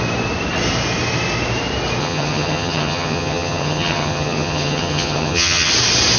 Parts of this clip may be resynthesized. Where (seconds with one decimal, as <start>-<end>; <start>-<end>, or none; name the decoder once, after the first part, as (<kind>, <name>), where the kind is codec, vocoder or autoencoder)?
2.0-5.7 (vocoder, HiFi-GAN)